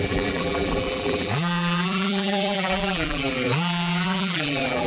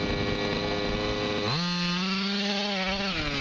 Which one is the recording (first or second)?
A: second